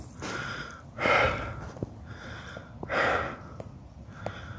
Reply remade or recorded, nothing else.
recorded